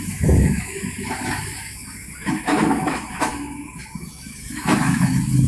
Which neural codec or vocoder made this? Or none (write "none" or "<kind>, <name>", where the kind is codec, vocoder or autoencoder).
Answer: autoencoder, DAC-VAE